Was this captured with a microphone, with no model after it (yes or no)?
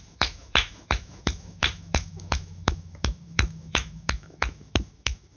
no